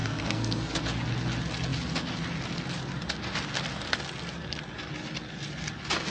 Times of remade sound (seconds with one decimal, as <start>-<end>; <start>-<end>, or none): 0.0-0.8

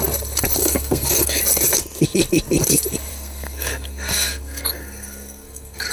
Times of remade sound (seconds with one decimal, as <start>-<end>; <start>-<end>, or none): 0.6-1.4; 3.1-5.9

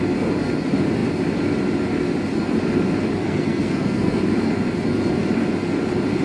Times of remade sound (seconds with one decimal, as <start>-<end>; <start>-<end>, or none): 3.2-4.2

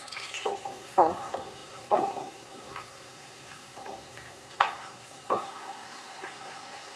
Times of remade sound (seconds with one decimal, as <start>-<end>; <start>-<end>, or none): 0.0-7.0

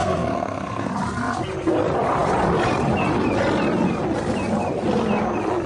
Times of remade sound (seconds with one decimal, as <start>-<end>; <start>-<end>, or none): 0.0-0.9

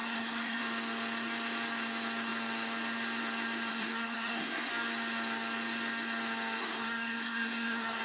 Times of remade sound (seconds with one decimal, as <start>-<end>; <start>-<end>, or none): 0.0-0.6; 3.7-4.7; 6.6-8.0